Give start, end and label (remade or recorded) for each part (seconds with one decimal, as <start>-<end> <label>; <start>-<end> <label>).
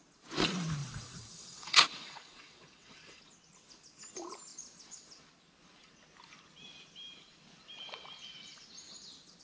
0.0-0.8 recorded; 0.8-3.2 remade; 3.2-9.4 recorded